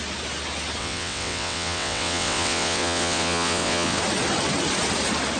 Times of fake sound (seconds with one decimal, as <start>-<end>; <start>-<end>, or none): 0.8-4.0